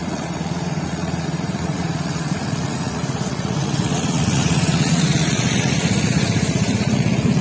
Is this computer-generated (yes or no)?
yes